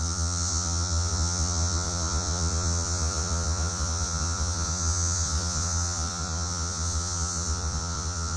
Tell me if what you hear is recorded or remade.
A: remade